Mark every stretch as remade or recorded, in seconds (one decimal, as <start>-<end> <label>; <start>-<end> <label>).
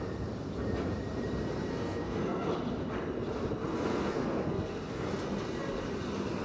0.0-1.7 recorded; 1.7-2.4 remade; 2.4-3.7 recorded; 3.7-5.1 remade; 5.1-6.4 recorded